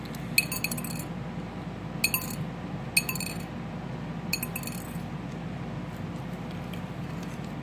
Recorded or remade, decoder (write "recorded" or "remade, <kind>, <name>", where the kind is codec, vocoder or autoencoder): recorded